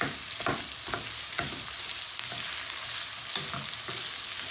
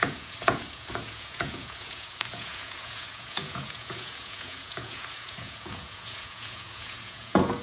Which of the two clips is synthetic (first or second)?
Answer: second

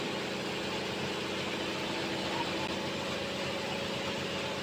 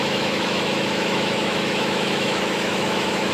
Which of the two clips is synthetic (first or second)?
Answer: second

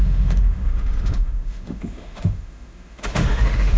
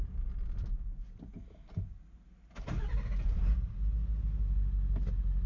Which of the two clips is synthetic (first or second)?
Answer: first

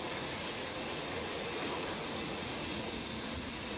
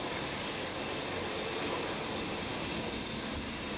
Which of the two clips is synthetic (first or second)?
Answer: first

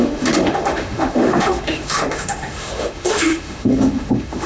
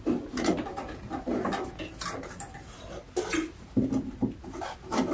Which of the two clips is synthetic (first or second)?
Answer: first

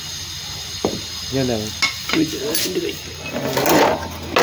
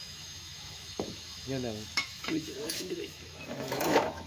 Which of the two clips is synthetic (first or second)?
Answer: second